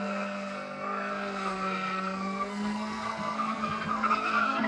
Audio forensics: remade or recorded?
remade